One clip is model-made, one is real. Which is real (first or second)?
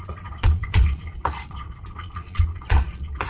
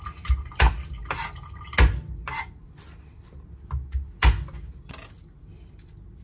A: second